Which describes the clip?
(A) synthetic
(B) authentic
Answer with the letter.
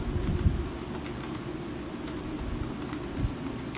B